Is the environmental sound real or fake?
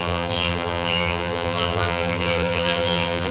fake